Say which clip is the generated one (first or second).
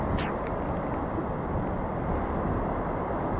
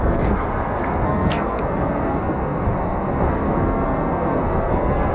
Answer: second